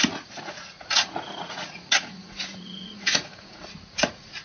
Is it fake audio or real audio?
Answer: fake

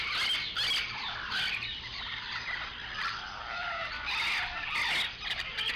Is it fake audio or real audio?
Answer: real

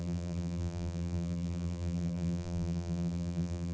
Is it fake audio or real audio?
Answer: fake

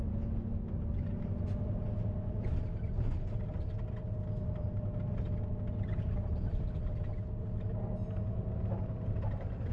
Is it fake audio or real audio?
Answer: real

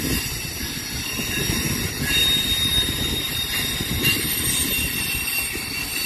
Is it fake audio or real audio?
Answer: real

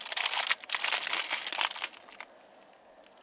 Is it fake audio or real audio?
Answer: real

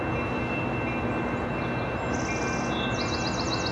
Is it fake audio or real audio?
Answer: real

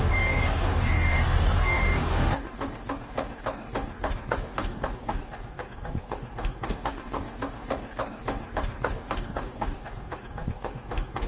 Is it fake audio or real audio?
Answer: fake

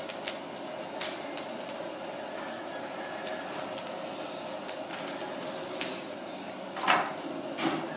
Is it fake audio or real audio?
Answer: real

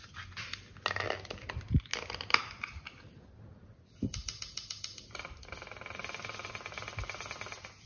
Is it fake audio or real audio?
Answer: real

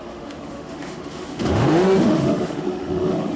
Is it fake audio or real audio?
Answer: fake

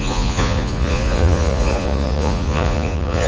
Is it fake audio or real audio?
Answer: fake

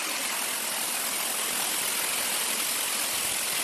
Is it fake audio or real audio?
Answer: real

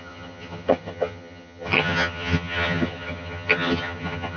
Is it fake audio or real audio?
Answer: fake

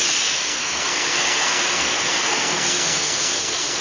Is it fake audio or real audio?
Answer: fake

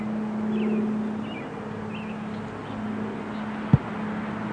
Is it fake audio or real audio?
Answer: real